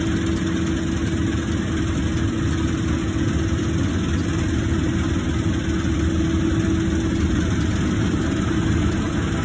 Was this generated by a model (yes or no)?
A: no